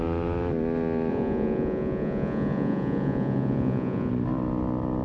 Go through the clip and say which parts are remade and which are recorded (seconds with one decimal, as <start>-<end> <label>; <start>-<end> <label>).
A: 0.0-1.1 recorded; 1.1-4.1 remade; 4.1-5.0 recorded